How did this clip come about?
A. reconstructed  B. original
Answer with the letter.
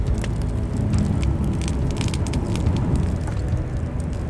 B